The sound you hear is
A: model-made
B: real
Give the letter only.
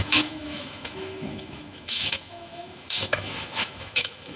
A